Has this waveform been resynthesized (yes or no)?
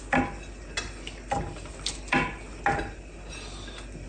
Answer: no